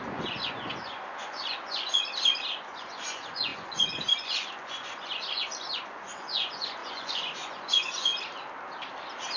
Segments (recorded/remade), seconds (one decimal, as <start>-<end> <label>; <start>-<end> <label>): 0.0-2.0 remade; 2.0-2.6 recorded; 2.6-8.1 remade; 8.1-9.4 recorded